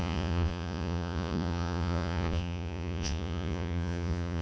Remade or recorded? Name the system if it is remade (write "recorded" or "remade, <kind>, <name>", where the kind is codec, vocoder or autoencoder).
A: remade, vocoder, Vocos